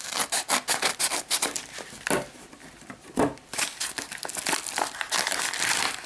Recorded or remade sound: recorded